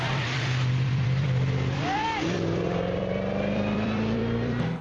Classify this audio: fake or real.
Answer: fake